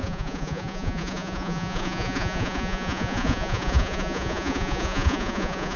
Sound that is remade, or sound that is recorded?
remade